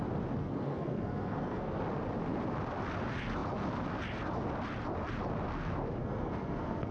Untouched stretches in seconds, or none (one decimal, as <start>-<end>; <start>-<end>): 0.0-0.4; 1.8-6.0